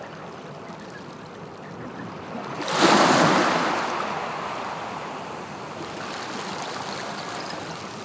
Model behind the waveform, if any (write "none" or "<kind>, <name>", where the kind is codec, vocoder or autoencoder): none